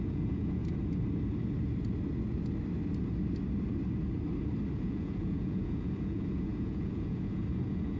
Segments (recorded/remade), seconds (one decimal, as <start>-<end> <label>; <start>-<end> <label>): 0.0-0.6 remade; 0.6-4.8 recorded; 4.8-8.0 remade